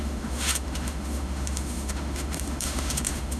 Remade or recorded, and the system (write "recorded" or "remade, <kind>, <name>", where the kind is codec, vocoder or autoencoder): remade, autoencoder, DAC-VAE